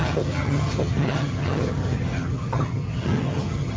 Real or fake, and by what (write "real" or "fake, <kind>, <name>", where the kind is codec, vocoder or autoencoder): fake, vocoder, HiFi-GAN